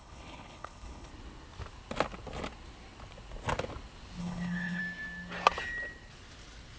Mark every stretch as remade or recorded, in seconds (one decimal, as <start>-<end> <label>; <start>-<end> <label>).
0.0-1.1 remade; 1.1-4.2 recorded; 4.2-4.8 remade; 4.8-6.8 recorded